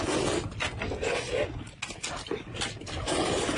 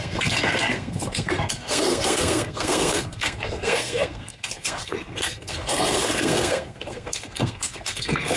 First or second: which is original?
first